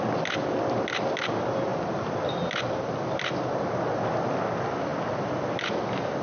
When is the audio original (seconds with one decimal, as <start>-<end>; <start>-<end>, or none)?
0.0-6.2